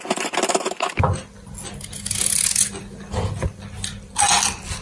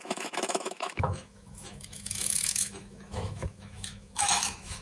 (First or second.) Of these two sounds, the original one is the first